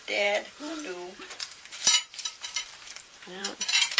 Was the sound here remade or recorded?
remade